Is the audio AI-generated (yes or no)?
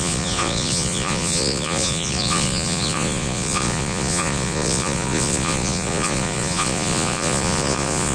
yes